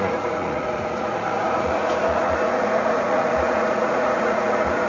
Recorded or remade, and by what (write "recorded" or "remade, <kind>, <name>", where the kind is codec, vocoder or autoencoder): remade, vocoder, Vocos